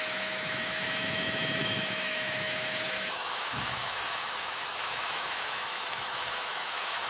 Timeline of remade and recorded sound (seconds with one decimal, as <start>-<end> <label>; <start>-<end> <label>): 0.0-7.1 remade